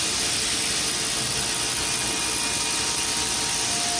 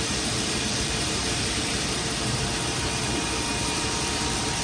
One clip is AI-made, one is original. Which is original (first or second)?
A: first